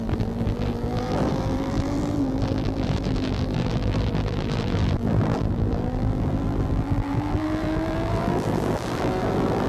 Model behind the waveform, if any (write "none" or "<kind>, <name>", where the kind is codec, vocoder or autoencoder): vocoder, BigVGAN v2